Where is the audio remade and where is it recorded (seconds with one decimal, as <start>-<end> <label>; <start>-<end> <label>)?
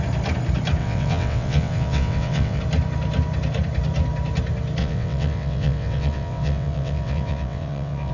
0.0-0.8 recorded; 0.8-2.6 remade; 2.6-4.8 recorded; 4.8-8.1 remade